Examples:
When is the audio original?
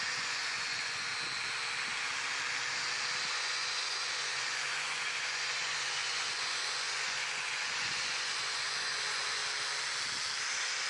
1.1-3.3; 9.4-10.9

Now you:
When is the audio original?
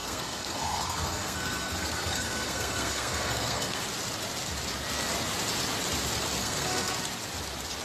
3.8-6.4; 6.9-7.8